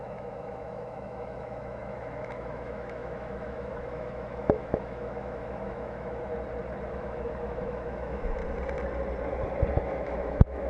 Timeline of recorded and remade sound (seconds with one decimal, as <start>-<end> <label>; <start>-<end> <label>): 0.0-6.3 remade; 6.3-6.9 recorded; 6.9-8.4 remade; 8.4-9.7 recorded; 9.7-10.7 remade